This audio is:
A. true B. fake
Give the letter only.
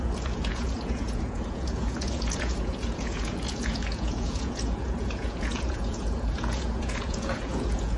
B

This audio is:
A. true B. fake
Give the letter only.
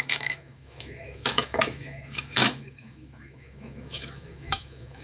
B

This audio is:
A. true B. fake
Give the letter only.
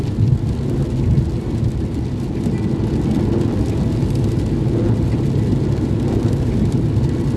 A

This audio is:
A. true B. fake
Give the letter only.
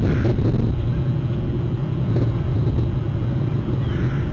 A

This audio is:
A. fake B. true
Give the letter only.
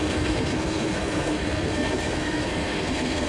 A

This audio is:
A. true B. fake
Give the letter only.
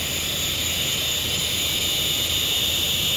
A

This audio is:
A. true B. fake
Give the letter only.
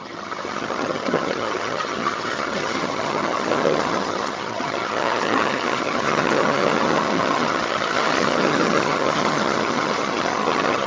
B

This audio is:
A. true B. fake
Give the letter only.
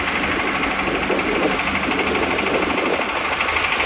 A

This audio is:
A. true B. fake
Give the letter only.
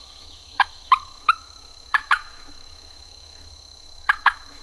B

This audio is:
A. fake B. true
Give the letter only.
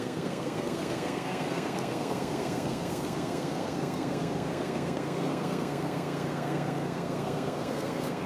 A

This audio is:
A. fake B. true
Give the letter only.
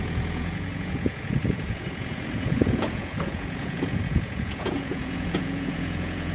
A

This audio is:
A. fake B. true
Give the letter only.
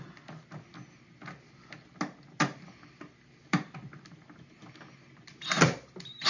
B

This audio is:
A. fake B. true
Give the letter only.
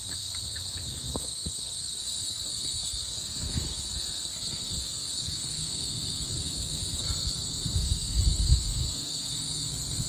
A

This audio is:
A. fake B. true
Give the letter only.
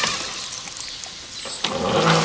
B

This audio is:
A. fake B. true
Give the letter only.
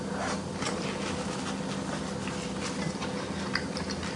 B